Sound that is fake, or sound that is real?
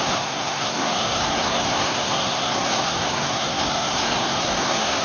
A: fake